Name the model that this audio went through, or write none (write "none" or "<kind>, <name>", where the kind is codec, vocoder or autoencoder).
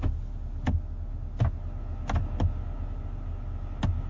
none